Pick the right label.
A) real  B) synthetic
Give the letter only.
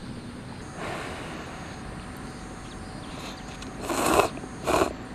A